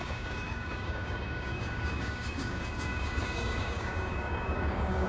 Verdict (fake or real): fake